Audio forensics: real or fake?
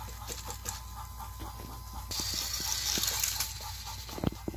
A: real